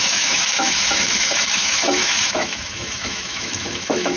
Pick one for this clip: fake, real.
fake